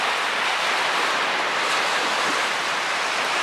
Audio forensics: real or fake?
real